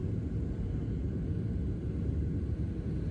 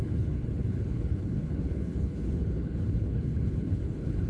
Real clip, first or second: first